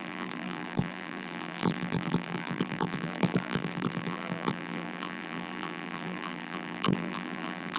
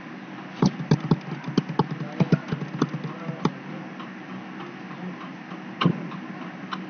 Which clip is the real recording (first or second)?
second